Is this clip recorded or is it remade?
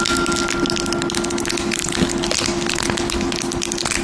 recorded